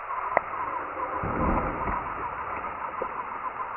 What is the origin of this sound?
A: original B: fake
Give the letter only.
A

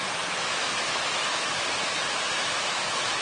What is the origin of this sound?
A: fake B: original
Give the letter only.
A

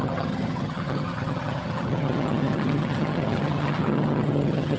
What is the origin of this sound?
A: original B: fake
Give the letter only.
B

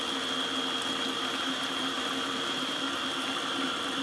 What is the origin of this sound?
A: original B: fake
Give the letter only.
A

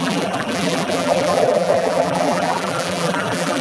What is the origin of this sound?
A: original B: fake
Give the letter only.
B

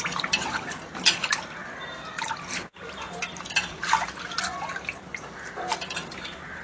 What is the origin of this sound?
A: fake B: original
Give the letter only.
B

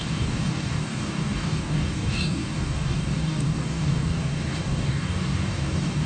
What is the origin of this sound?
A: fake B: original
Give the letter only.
A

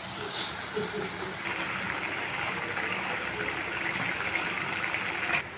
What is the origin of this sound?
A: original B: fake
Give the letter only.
A